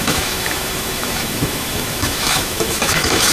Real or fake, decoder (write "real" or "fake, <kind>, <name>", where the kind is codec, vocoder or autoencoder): fake, autoencoder, DAC-VAE